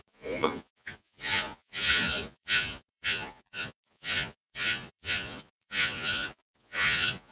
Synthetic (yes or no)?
yes